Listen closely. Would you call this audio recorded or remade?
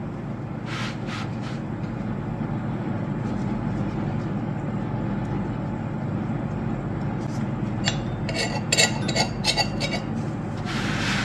recorded